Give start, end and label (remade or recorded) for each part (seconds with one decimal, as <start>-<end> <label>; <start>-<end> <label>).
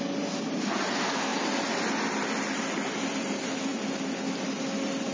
0.0-5.1 recorded